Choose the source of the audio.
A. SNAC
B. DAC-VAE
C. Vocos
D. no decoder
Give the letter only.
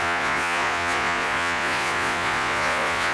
C